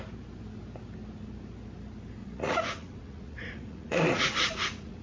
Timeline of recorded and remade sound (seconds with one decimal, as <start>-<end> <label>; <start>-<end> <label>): 0.0-2.2 recorded; 2.2-5.0 remade

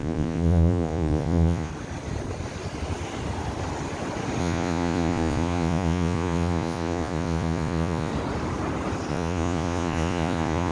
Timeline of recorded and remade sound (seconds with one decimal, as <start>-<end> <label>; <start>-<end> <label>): 0.0-1.7 remade; 1.7-4.4 recorded; 4.4-8.1 remade; 8.1-9.1 recorded; 9.1-10.7 remade

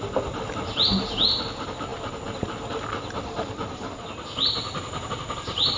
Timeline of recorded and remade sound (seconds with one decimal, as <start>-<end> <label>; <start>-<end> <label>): 0.0-5.8 recorded

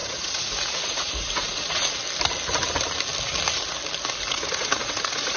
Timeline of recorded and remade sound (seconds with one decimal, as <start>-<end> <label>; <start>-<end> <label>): 0.0-2.0 remade; 2.0-4.3 recorded; 4.3-5.4 remade

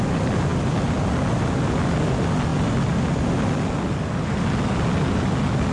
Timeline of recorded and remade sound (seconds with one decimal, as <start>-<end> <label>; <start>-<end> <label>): 0.0-5.7 recorded

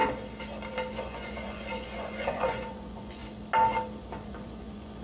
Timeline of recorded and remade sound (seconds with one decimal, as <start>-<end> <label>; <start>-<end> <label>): 0.0-0.9 recorded; 0.9-3.2 remade; 3.2-4.3 recorded; 4.3-5.0 remade